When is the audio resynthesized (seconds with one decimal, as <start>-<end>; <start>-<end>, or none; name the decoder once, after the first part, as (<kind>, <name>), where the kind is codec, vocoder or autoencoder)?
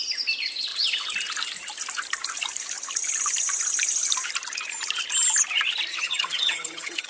5.9-7.1 (vocoder, HiFi-GAN)